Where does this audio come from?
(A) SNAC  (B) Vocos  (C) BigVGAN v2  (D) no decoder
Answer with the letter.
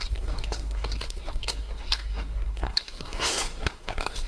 A